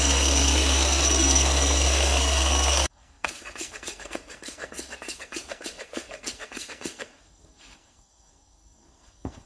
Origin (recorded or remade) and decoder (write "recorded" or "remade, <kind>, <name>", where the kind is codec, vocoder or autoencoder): remade, codec, SNAC